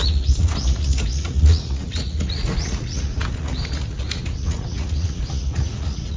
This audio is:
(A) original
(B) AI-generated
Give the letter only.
B